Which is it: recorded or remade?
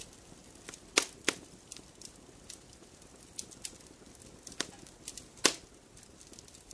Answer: recorded